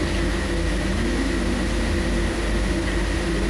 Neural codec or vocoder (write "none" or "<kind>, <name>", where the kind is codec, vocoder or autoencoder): none